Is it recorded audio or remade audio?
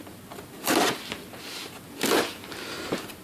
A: recorded